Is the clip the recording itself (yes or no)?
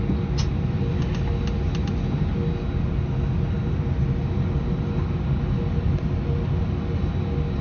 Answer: yes